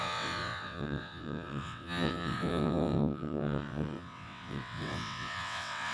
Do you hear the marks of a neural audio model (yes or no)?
yes